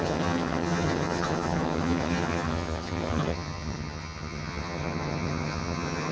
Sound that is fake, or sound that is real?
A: fake